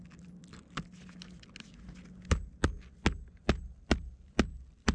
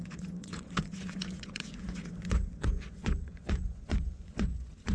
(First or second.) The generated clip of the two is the second